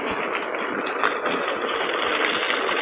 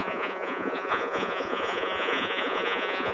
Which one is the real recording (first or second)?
first